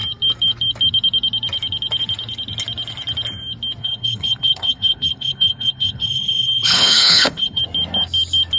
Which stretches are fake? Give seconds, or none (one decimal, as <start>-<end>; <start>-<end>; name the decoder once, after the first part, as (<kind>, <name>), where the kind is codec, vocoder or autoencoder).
3.8-7.6 (codec, HILCodec)